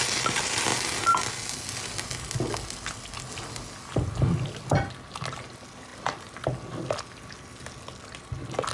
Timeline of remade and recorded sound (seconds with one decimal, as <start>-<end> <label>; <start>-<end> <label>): 0.0-8.7 recorded